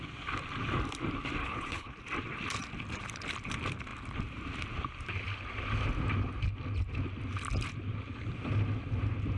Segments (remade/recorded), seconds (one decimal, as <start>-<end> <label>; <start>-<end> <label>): 0.0-1.4 recorded; 1.4-2.0 remade; 2.0-9.4 recorded